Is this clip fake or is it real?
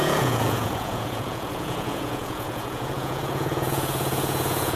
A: fake